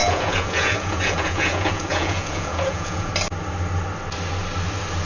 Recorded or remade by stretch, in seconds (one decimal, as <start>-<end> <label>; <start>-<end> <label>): 0.0-3.1 remade; 3.1-5.1 recorded